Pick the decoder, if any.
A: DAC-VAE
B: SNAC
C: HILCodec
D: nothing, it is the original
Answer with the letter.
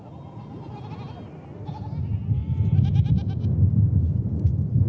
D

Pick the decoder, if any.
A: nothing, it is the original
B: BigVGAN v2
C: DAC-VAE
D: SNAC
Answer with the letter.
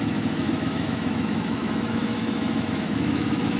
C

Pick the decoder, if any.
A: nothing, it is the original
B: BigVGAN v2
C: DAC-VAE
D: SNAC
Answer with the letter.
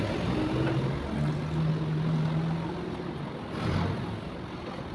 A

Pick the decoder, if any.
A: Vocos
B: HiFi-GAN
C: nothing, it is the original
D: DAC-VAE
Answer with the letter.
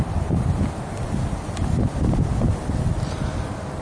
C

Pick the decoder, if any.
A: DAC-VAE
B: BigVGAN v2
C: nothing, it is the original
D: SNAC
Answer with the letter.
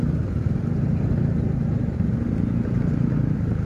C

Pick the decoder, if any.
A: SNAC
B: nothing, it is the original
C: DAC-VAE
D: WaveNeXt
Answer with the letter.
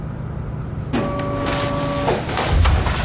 B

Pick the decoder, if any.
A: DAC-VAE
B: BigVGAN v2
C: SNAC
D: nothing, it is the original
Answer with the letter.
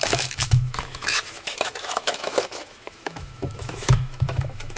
A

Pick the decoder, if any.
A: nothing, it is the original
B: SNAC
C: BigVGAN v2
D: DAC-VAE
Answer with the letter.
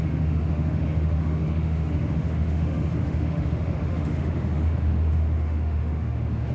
D